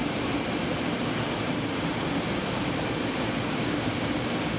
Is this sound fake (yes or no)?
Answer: yes